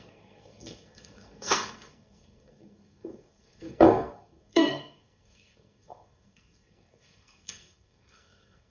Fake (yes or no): yes